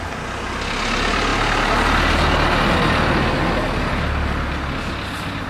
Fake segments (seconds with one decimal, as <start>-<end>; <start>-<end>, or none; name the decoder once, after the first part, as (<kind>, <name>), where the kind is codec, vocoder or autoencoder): none